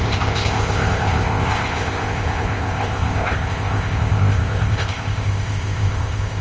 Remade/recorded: remade